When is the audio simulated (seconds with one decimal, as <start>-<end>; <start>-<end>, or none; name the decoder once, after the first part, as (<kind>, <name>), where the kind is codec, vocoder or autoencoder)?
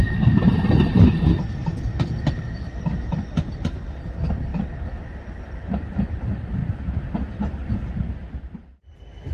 0.0-1.9 (vocoder, BigVGAN v2); 2.8-4.5; 5.5-6.6; 8.4-9.3